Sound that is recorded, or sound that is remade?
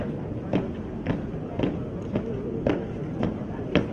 recorded